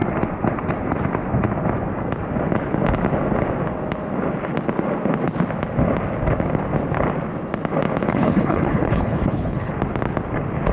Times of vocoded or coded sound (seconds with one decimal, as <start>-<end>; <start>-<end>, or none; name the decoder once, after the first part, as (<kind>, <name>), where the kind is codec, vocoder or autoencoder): 8.1-9.7 (codec, HILCodec)